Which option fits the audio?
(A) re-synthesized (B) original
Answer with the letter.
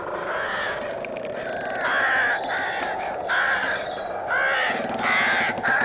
B